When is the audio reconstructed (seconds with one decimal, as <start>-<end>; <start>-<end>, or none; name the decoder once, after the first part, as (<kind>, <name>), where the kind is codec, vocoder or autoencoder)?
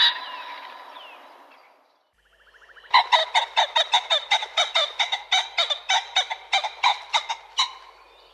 none